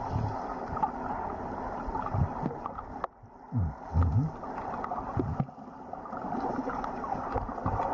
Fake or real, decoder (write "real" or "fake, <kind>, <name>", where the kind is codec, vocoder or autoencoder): real